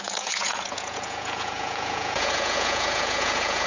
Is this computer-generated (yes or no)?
yes